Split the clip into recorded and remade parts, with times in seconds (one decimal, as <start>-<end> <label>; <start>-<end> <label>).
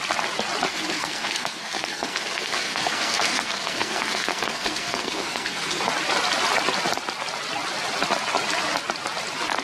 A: 0.0-0.7 recorded; 0.7-5.8 remade; 5.8-9.6 recorded